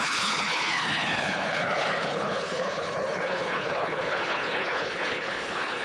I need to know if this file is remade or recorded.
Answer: remade